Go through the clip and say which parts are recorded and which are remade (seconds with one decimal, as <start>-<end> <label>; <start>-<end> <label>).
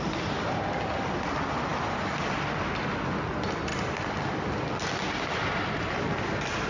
0.0-6.7 recorded